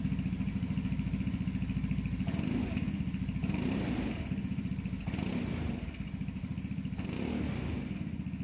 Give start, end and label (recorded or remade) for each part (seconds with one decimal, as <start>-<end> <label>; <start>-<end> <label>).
0.0-3.4 recorded; 3.4-4.7 remade; 4.7-8.4 recorded